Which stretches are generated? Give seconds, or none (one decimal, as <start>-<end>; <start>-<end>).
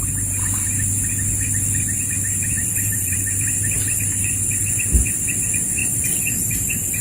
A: 2.6-3.5; 5.8-7.0